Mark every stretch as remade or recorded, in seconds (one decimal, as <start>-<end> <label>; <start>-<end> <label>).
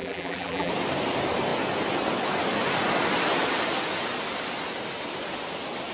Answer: 0.0-0.7 remade; 0.7-5.9 recorded